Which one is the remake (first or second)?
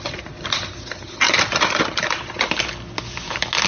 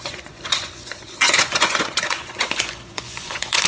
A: second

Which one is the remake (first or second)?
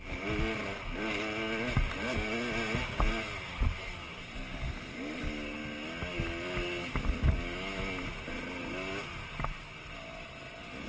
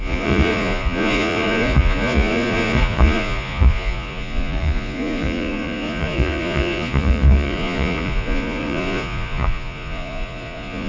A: second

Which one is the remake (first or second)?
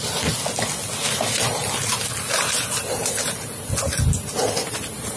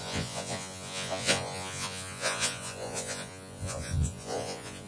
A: second